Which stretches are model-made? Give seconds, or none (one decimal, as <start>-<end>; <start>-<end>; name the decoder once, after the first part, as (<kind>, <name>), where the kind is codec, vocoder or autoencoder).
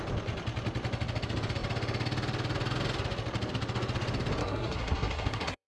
4.4-5.7 (codec, SNAC)